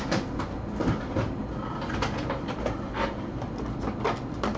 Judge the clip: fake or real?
real